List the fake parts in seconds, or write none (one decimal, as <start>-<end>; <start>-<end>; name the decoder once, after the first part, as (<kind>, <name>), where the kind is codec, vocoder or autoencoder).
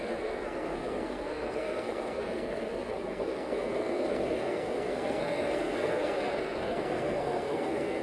0.0-8.0 (codec, SNAC)